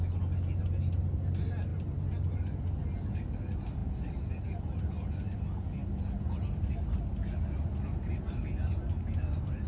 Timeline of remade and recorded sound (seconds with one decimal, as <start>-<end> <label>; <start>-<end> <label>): 0.0-9.7 recorded